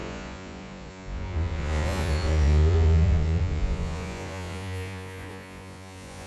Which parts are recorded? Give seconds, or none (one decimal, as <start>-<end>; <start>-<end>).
none

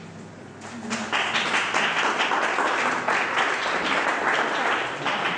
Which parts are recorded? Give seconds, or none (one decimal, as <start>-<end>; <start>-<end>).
0.0-5.4